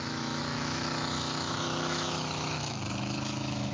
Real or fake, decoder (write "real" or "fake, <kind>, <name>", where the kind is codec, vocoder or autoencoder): fake, autoencoder, DAC-VAE